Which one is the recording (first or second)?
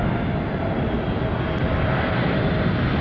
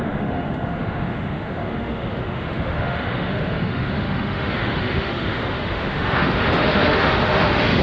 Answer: first